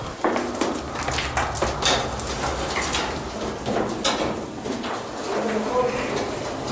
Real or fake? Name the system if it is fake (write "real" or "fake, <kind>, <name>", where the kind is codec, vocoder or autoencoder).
real